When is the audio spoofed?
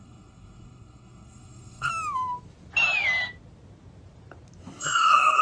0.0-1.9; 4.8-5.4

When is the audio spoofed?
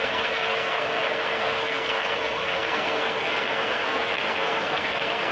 0.0-5.3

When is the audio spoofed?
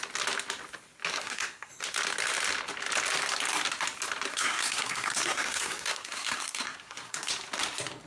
1.1-1.7; 4.3-7.3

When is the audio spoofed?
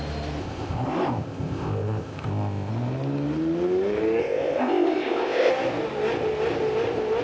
0.4-2.7; 4.2-5.5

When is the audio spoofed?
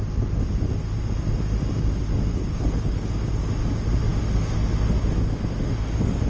2.3-3.1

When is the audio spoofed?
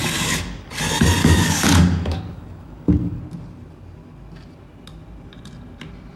0.0-0.7; 1.2-3.2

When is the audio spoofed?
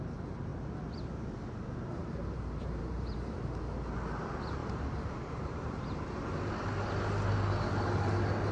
2.0-3.6; 4.6-6.5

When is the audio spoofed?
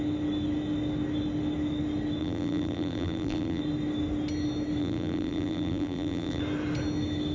2.2-3.6; 4.8-6.4